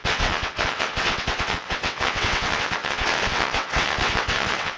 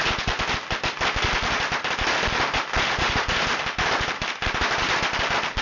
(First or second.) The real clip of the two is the second